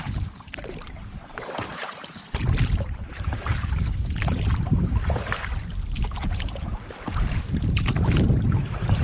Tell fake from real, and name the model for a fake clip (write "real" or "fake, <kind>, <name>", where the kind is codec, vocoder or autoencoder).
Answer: fake, vocoder, BigVGAN v2